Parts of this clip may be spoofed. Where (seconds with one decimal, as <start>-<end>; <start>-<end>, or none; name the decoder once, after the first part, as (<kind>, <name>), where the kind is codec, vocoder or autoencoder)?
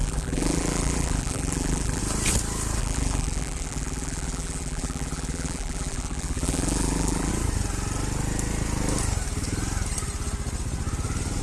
0.0-2.0 (vocoder, BigVGAN v2); 2.8-7.3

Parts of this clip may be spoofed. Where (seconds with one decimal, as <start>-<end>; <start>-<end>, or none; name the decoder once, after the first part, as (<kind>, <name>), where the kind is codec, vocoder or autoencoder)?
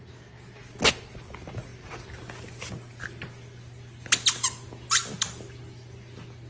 none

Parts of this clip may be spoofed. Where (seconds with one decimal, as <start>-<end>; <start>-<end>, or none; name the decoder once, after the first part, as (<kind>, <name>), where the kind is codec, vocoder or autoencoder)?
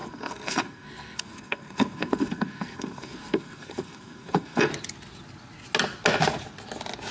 0.0-4.7 (codec, SNAC)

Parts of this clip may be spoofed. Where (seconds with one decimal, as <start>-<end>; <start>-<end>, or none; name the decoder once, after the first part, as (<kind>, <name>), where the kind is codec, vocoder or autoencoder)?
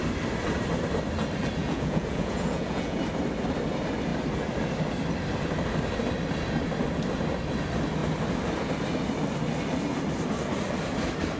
1.6-3.0 (vocoder, Vocos)